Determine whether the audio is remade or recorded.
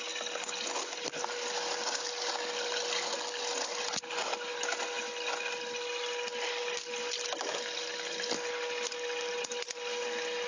recorded